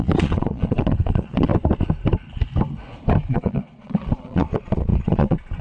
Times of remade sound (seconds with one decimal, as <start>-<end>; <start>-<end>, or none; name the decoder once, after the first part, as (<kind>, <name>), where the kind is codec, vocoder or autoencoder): 0.0-1.5 (vocoder, Vocos); 3.3-5.6